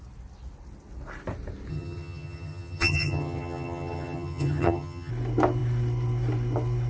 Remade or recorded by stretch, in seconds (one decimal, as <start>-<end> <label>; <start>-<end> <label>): 0.0-1.7 recorded; 1.7-5.1 remade; 5.1-6.9 recorded